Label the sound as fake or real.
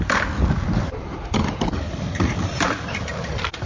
fake